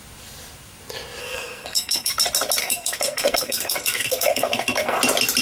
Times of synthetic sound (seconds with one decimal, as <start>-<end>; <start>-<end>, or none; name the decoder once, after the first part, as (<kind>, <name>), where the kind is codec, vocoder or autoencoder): 1.2-2.1 (codec, SNAC); 2.6-5.0